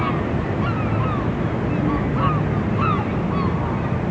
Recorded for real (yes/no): yes